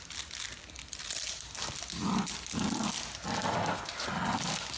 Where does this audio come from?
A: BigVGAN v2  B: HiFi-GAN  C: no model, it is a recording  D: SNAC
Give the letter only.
C